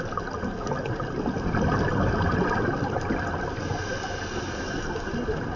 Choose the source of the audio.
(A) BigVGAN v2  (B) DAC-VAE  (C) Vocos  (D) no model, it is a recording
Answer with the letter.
D